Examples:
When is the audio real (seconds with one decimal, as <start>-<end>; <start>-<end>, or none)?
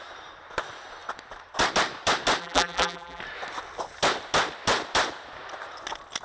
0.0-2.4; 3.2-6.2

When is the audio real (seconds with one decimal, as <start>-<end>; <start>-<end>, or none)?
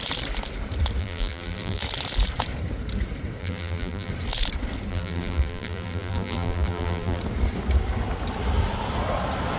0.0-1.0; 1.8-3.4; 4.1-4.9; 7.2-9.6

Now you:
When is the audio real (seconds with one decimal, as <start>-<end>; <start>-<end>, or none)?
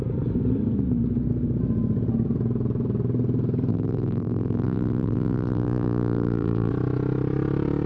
0.0-3.7; 6.7-7.9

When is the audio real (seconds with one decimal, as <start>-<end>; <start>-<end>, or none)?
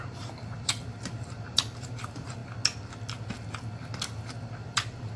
2.4-4.5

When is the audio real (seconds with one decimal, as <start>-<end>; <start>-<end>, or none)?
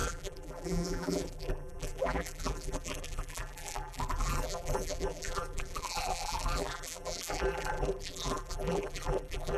none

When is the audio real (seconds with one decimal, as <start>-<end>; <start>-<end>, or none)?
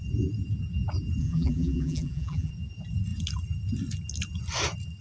0.0-1.2; 2.5-5.0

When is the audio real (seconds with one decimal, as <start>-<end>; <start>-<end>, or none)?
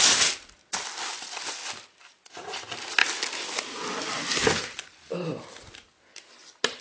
0.0-1.6; 2.2-3.0; 5.6-6.8